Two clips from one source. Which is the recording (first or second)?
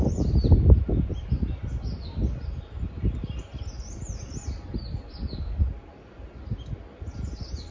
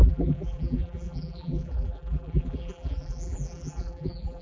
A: first